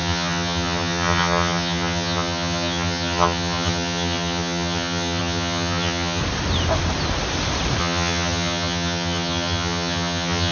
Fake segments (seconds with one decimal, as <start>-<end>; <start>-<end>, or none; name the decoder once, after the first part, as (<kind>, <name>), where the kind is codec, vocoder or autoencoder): 0.0-6.2 (vocoder, HiFi-GAN); 7.8-10.5